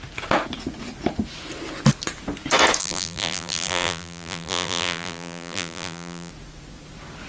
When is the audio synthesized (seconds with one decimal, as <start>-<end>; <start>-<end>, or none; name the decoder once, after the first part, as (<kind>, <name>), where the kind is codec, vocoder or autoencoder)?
2.8-6.3 (vocoder, BigVGAN v2)

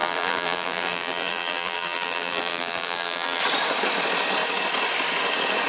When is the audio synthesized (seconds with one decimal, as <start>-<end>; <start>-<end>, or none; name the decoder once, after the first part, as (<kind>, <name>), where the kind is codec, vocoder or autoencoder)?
0.0-3.4 (vocoder, BigVGAN v2)

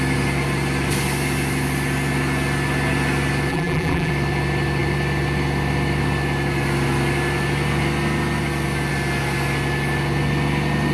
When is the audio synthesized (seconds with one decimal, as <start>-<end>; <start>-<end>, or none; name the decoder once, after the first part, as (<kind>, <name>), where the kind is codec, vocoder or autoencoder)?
3.5-4.1 (vocoder, BigVGAN v2)